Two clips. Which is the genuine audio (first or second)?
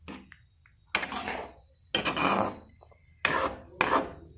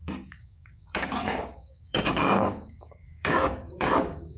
first